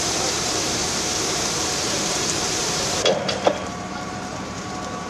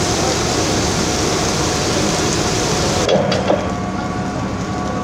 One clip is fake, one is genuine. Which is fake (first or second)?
first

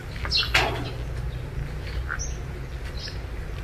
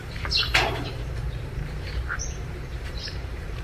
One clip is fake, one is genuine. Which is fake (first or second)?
second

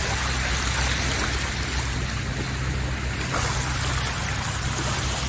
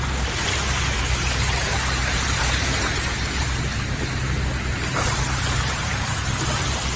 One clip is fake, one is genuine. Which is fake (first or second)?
second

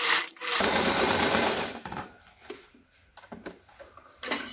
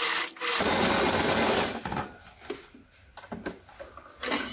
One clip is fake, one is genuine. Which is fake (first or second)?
first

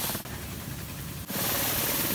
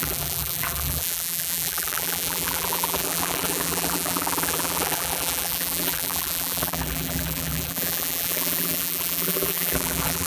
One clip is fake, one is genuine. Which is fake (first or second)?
second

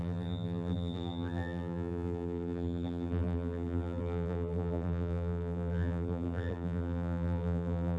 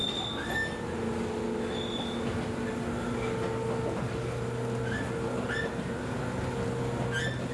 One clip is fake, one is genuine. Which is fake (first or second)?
first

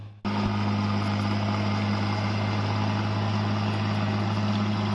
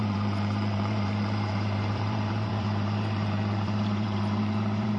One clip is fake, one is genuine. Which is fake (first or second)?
second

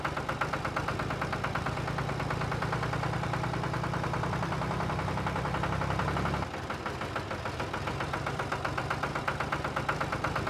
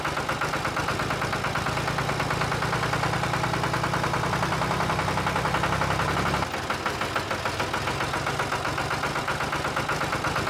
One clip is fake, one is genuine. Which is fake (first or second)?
first